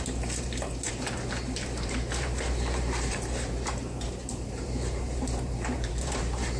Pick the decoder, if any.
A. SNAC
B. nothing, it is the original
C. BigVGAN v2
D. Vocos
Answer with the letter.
C